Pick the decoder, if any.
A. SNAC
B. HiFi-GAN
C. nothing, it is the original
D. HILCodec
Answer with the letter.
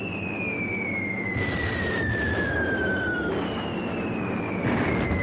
C